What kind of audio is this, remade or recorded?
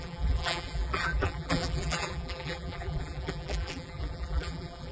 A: remade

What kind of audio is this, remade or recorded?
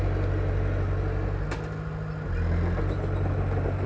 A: recorded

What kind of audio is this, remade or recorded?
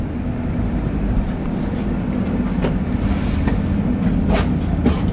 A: recorded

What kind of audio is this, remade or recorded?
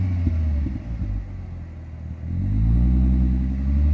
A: recorded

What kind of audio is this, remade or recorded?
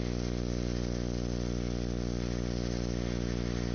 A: recorded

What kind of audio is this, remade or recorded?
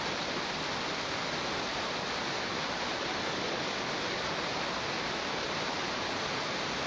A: recorded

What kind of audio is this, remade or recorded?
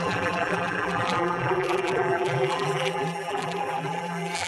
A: remade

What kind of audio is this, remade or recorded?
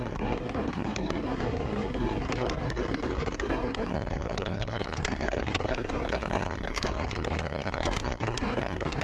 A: remade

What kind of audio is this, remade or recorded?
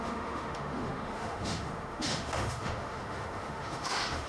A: remade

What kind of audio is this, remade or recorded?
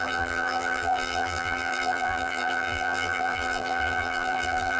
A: remade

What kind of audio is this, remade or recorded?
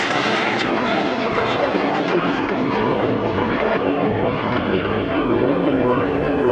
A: remade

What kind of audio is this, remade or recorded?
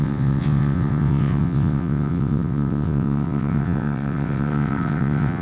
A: remade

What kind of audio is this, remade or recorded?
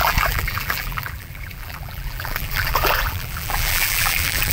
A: remade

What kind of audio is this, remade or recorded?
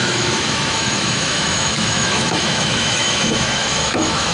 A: remade